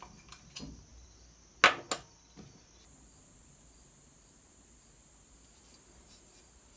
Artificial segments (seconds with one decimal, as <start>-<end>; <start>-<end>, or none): none

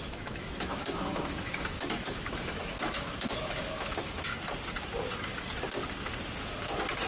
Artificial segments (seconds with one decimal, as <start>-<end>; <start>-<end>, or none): 0.0-4.3